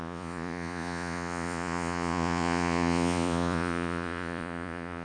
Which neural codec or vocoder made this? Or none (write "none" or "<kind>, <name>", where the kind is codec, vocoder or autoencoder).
vocoder, Vocos